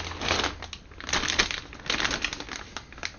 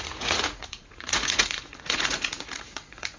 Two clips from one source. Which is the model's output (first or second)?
second